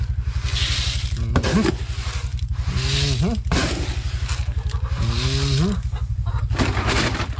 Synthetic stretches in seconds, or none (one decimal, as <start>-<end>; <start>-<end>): none